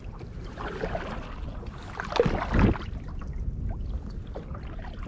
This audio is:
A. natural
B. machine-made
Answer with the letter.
A